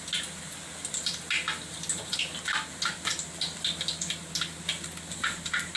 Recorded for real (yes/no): yes